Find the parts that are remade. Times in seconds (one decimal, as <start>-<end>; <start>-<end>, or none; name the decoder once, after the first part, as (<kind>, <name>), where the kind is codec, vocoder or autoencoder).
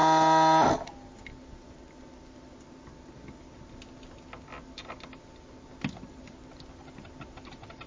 none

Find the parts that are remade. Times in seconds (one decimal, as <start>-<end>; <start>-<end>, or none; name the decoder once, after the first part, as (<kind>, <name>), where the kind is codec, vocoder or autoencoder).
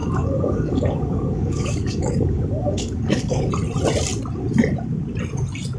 0.0-3.5 (codec, DAC)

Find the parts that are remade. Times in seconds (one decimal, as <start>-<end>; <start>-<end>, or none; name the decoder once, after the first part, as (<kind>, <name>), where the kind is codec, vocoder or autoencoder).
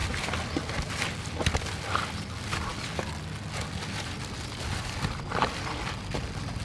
none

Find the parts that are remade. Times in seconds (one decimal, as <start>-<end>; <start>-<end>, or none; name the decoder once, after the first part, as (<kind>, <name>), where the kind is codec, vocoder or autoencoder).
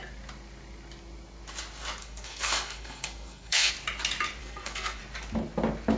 2.0-3.7 (codec, SNAC); 4.4-5.0